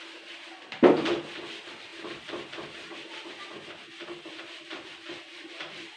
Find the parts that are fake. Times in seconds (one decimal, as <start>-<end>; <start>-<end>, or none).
5.3-6.0